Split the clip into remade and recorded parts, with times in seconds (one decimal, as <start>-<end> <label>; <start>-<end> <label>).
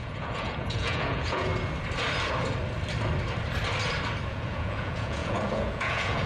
0.0-1.5 remade; 1.5-4.3 recorded; 4.3-6.3 remade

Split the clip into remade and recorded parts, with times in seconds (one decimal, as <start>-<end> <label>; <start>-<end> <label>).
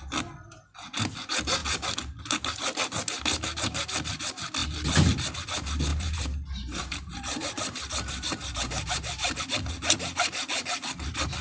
0.0-5.9 recorded; 5.9-9.4 remade; 9.4-11.4 recorded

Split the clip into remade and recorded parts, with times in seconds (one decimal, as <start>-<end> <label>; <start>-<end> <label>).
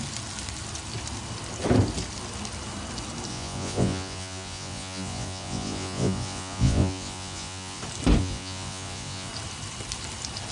0.0-3.3 recorded; 3.3-7.8 remade; 7.8-8.2 recorded; 8.2-9.3 remade; 9.3-10.5 recorded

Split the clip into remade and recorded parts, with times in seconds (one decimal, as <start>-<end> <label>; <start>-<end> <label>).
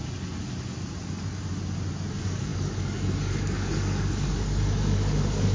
0.0-2.1 recorded; 2.1-5.5 remade